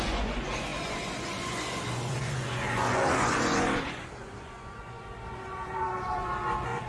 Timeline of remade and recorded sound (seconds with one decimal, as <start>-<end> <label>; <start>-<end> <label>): 0.0-6.9 remade